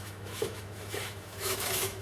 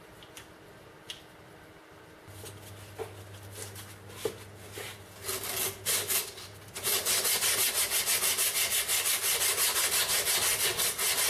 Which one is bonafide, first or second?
second